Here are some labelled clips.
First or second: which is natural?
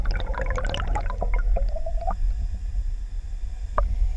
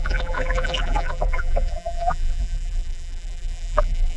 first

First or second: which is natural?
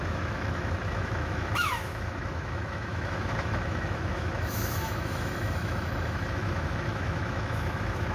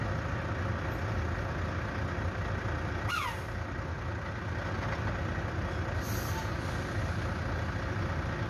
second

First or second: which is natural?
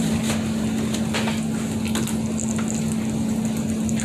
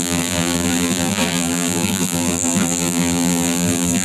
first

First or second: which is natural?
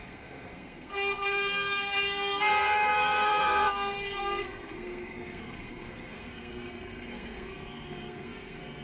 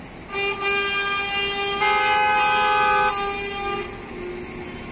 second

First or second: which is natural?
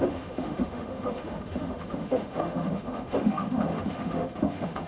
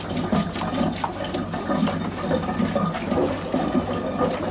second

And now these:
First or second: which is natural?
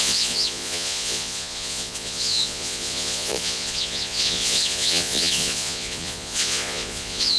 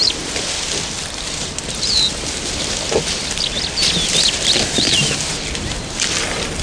second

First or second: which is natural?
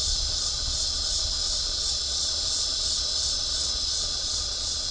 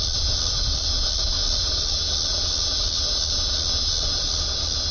second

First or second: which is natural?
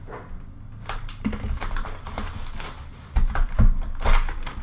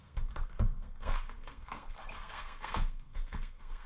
first